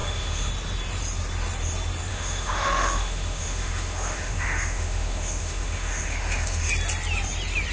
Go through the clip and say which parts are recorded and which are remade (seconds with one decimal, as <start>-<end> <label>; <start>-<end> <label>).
0.0-0.5 remade; 0.5-2.1 recorded; 2.1-6.7 remade; 6.7-7.7 recorded